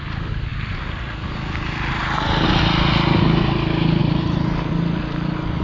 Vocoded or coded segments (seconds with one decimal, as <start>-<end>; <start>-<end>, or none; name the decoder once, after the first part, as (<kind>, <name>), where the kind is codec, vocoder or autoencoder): 4.0-4.7 (vocoder, BigVGAN v2)